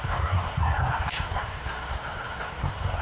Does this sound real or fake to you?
fake